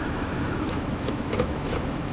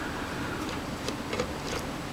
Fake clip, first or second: first